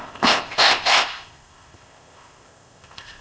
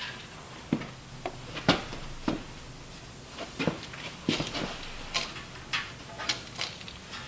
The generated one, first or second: first